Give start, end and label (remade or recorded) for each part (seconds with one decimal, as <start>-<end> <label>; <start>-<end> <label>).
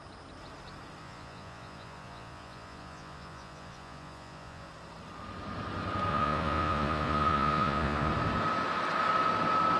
0.0-1.0 recorded; 1.0-4.7 remade; 4.7-6.1 recorded; 6.1-8.1 remade; 8.1-9.8 recorded